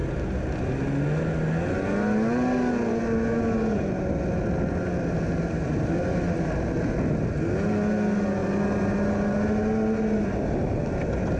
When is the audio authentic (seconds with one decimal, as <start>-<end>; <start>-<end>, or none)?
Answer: 0.0-11.4